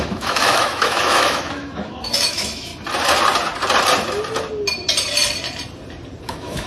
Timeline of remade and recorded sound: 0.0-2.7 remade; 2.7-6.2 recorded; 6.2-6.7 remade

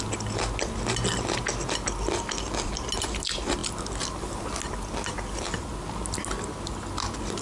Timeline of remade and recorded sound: 0.0-7.4 recorded

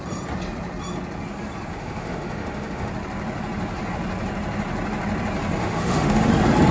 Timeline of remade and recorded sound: 0.0-1.7 recorded; 1.7-2.9 remade; 2.9-5.6 recorded; 5.6-6.3 remade; 6.3-6.7 recorded

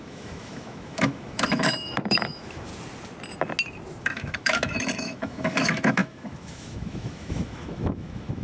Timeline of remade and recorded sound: 0.0-2.7 remade; 2.7-4.0 recorded; 4.0-8.4 remade

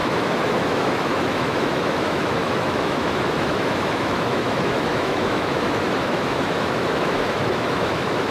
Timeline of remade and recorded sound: 0.0-8.3 remade

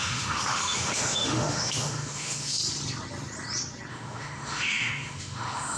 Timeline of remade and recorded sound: 0.0-2.6 remade; 2.6-3.9 recorded; 3.9-5.8 remade

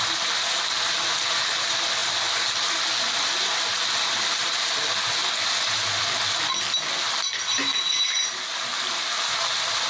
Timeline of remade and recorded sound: 0.0-9.9 recorded